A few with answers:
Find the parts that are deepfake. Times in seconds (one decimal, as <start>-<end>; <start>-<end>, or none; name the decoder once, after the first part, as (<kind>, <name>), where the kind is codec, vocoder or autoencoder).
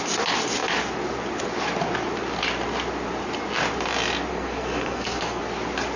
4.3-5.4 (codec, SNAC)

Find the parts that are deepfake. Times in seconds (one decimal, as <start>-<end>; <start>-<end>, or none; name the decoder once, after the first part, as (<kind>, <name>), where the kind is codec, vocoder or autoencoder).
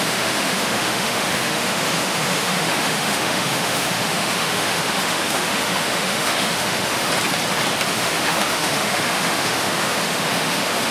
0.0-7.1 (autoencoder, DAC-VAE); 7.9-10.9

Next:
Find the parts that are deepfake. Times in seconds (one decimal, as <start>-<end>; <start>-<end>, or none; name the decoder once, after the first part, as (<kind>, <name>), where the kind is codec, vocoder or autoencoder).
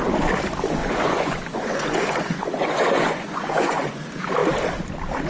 0.8-4.0 (vocoder, Vocos)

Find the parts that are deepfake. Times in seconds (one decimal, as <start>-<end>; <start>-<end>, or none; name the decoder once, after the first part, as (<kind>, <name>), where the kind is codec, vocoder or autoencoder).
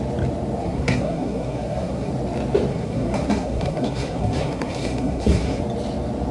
0.6-2.1 (codec, SNAC); 2.7-5.6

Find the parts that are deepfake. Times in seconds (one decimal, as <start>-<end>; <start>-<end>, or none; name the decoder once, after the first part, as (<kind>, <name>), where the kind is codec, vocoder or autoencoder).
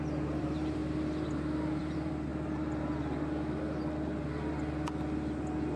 0.0-0.8 (vocoder, BigVGAN v2); 1.8-2.3